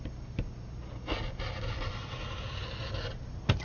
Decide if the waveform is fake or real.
real